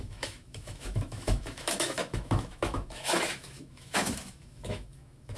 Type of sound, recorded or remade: remade